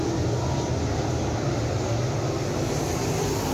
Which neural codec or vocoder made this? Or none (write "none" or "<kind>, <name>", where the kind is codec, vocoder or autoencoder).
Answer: none